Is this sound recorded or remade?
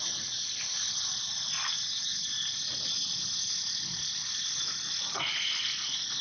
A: recorded